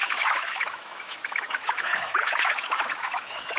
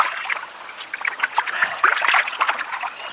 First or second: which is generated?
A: first